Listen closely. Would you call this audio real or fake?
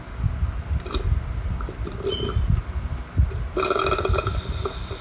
real